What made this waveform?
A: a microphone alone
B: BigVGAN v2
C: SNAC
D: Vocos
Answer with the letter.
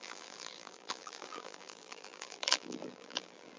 B